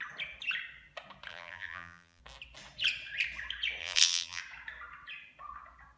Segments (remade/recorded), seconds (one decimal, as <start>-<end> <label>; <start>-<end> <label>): 0.0-1.3 recorded; 1.3-2.2 remade; 2.2-3.8 recorded; 3.8-4.4 remade; 4.4-6.0 recorded